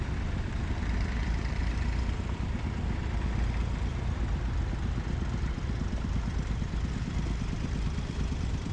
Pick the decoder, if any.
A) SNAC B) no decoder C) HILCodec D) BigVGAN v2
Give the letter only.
D